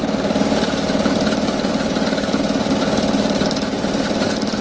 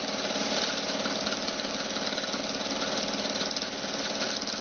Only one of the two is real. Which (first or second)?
second